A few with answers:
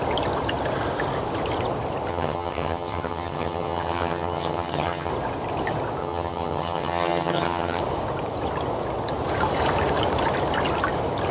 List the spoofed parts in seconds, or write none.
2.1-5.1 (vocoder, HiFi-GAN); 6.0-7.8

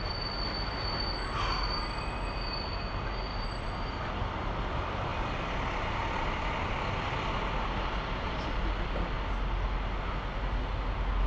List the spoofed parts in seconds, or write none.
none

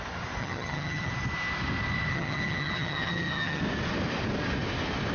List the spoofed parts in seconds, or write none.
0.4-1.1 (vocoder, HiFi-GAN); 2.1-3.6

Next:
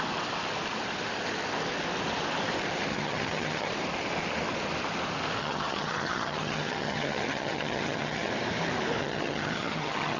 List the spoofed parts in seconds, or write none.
2.9-3.7 (vocoder, HiFi-GAN); 5.4-8.3; 9.0-10.2

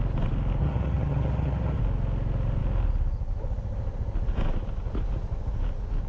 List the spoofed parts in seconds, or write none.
0.6-1.8 (vocoder, HiFi-GAN)

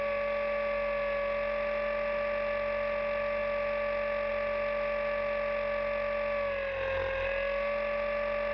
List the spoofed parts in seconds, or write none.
none